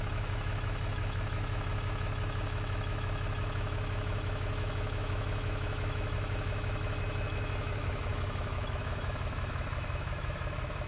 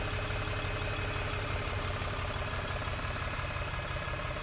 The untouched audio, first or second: second